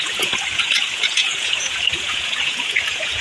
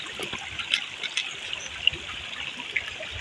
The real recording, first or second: second